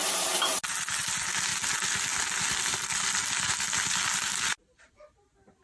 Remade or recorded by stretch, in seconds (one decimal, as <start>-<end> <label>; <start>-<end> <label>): 0.0-5.6 recorded